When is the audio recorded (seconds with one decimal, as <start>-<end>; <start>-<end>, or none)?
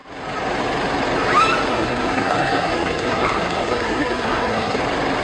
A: 0.0-1.7; 4.8-5.2